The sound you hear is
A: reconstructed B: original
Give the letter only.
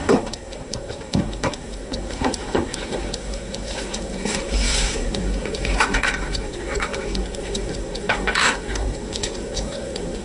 A